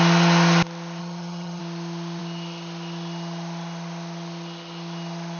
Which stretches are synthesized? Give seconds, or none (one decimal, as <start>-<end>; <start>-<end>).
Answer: 1.0-1.6